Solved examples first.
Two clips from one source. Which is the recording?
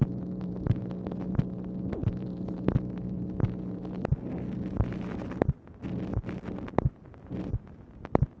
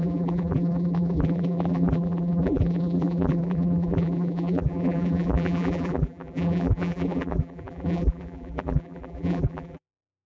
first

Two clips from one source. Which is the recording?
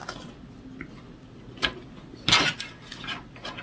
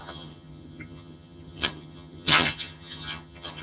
first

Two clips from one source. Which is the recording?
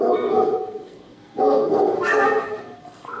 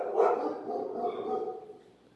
second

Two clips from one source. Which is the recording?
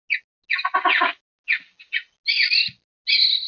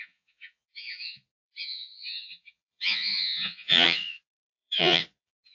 first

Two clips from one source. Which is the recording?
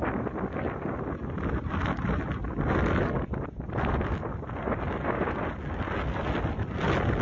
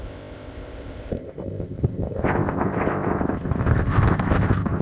first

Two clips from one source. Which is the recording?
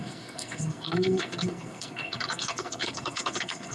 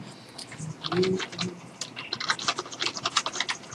second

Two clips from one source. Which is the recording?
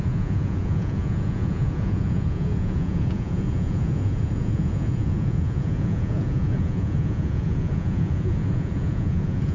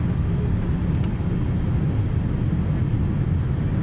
second